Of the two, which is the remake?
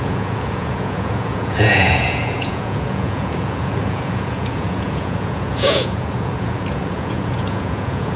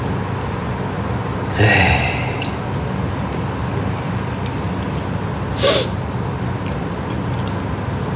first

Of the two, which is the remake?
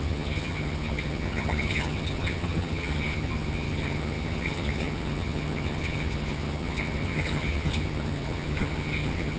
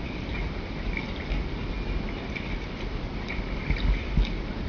first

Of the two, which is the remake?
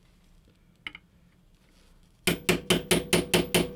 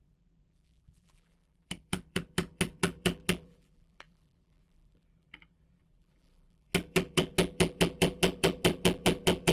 second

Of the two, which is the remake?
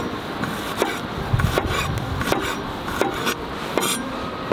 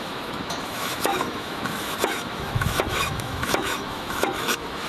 second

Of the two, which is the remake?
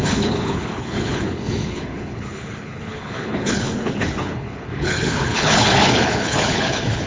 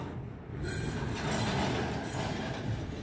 first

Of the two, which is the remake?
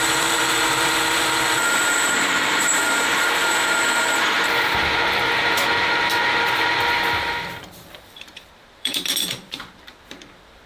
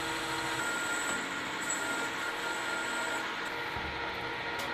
first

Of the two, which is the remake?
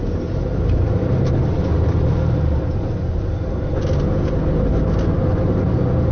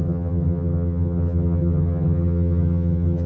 second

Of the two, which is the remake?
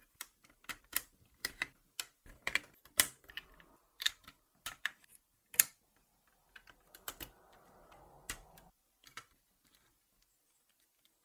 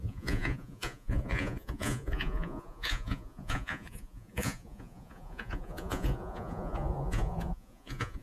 second